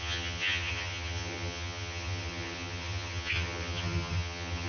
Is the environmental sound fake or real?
fake